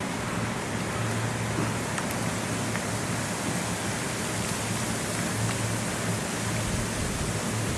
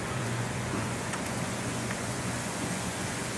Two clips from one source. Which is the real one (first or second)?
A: first